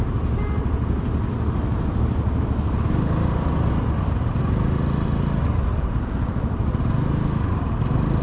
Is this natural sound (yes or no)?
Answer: yes